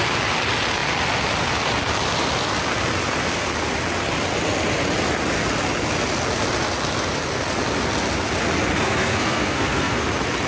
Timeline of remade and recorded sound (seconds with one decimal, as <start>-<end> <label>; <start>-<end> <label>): 0.0-8.7 recorded; 8.7-10.0 remade; 10.0-10.5 recorded